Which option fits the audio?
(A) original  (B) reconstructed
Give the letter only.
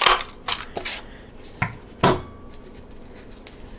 A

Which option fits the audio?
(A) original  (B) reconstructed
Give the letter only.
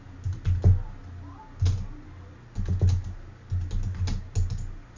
A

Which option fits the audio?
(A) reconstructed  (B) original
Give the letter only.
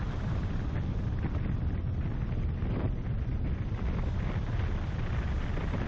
B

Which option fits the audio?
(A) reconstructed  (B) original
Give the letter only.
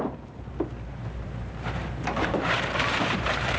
A